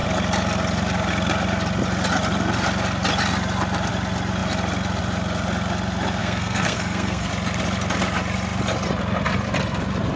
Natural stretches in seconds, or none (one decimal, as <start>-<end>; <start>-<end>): 0.0-6.2; 7.3-10.2